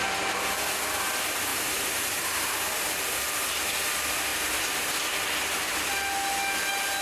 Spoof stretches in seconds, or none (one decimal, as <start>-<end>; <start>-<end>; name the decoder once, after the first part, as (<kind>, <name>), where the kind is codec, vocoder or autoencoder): 1.5-3.7 (vocoder, BigVGAN v2)